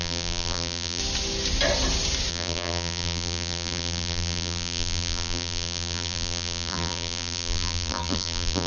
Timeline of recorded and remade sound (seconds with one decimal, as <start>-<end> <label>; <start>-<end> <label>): 0.0-1.0 remade; 1.0-2.3 recorded; 2.3-8.7 remade